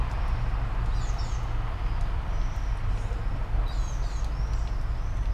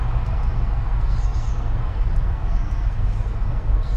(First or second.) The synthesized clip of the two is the second